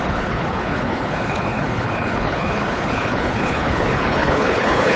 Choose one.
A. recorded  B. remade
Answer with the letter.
B